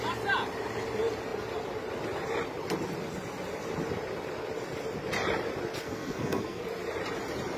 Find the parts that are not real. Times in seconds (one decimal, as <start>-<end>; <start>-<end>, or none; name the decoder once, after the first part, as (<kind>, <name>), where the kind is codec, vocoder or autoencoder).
5.8-6.6 (codec, SNAC)